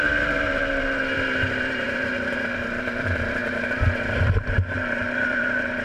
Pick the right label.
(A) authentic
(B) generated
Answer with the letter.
B